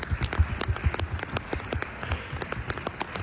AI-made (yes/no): no